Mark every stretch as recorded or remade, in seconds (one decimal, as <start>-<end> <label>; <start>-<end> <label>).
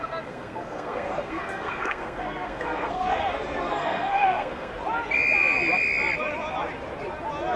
0.0-4.7 remade; 4.7-7.6 recorded